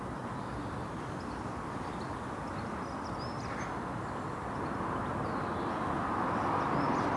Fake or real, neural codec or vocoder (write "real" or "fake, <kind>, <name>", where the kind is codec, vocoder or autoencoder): real